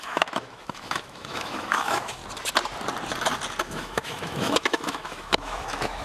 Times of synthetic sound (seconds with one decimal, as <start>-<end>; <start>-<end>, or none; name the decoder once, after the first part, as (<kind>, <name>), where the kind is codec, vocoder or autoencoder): 0.0-2.2 (autoencoder, DAC-VAE); 3.6-6.0